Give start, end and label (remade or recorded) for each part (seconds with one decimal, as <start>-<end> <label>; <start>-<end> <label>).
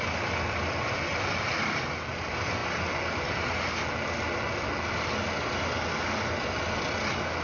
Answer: 0.0-7.4 recorded